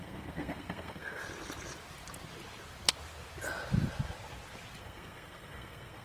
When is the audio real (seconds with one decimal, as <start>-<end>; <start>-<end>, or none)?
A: 1.2-4.8